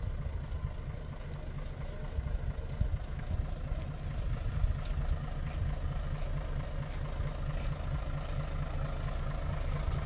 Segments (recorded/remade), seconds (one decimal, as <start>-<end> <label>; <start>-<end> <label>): 0.0-10.1 recorded